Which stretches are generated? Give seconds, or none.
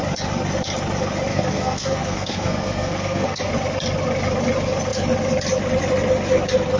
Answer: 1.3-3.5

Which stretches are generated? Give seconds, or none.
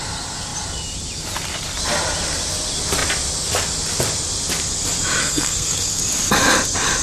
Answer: 5.2-6.0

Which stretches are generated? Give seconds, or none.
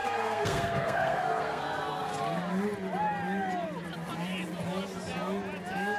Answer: 0.0-2.1